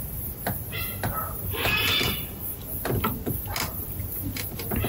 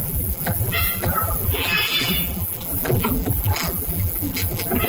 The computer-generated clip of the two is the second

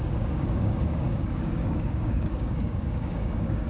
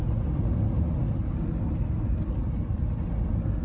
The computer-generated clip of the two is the first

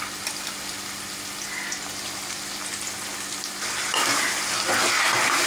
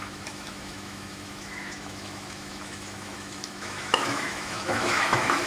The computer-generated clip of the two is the second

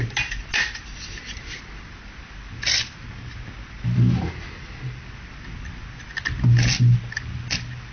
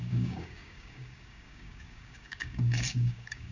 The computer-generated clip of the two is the second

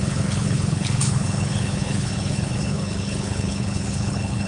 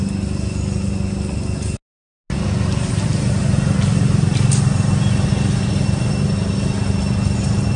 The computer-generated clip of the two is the first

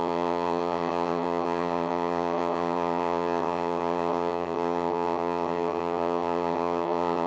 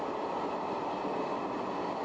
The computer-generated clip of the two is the first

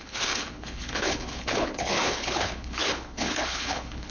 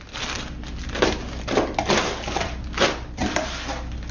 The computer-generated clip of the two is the first